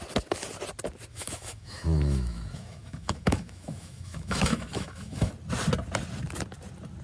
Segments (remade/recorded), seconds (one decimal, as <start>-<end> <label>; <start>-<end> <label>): 0.0-1.1 recorded; 1.1-5.3 remade; 5.3-7.0 recorded